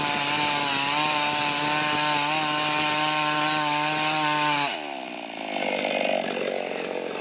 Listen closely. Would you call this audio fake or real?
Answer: real